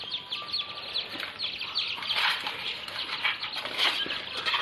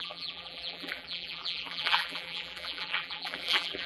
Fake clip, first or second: second